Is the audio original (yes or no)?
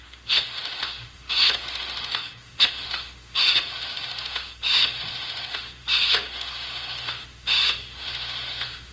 no